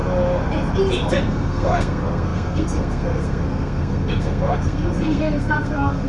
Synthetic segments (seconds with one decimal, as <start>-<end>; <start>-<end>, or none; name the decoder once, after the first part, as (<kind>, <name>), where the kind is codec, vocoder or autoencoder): 1.1-6.1 (codec, SNAC)